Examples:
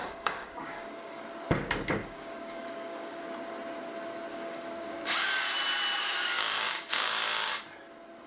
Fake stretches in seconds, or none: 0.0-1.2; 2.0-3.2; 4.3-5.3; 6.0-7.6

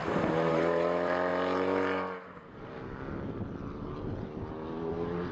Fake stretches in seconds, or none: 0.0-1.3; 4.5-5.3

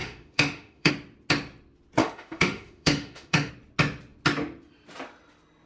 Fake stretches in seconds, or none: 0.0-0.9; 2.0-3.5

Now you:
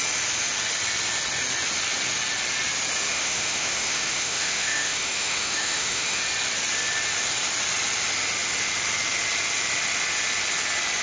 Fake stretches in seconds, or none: 3.1-6.2